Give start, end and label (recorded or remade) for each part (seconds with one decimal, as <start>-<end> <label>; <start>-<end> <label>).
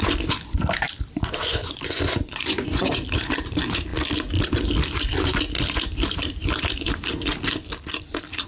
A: 0.0-1.6 recorded; 1.6-3.0 remade; 3.0-8.5 recorded